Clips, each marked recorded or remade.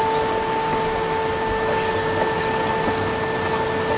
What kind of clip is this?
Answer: recorded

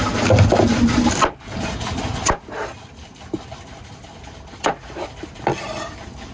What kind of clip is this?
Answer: recorded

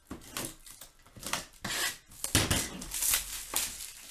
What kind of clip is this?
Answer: recorded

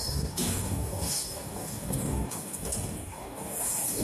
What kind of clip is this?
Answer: remade